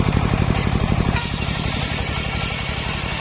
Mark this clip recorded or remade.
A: remade